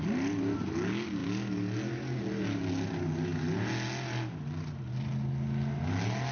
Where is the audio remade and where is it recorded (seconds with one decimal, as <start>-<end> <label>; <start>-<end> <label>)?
0.0-6.3 recorded